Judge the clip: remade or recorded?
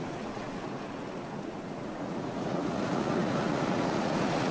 remade